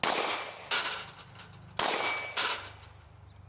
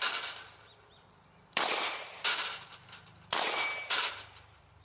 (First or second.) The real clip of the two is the first